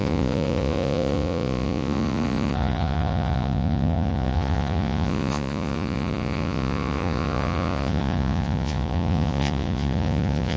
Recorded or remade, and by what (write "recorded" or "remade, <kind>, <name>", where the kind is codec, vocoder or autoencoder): remade, vocoder, Vocos